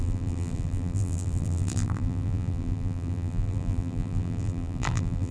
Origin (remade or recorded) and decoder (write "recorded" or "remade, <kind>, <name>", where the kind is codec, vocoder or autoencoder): remade, vocoder, BigVGAN v2